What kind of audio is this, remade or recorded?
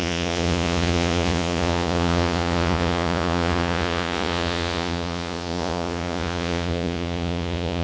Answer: remade